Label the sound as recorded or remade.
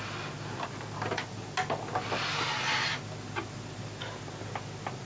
recorded